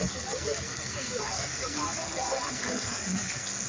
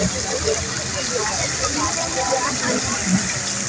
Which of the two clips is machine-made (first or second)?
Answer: first